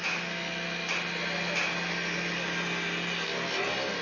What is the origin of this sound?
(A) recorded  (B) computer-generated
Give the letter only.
A